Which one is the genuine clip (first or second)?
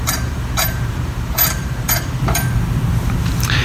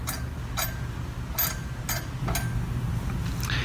second